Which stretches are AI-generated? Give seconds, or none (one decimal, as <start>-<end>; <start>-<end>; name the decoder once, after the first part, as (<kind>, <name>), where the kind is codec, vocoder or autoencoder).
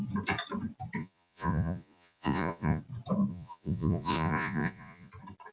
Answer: 1.0-2.8 (vocoder, Vocos); 3.3-5.1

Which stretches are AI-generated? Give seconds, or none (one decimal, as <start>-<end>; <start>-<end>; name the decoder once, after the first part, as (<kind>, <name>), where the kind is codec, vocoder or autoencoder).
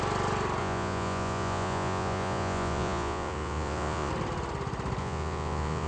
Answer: 0.6-4.1 (vocoder, Vocos); 5.0-5.9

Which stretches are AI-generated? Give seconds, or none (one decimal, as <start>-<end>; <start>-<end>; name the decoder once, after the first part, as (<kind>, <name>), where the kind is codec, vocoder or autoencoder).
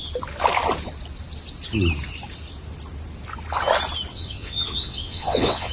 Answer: 4.1-5.7 (vocoder, WaveNeXt)